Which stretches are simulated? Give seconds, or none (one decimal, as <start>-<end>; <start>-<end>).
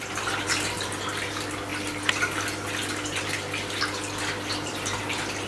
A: none